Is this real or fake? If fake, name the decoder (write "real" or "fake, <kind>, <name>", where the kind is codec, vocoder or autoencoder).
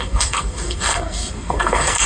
fake, codec, SNAC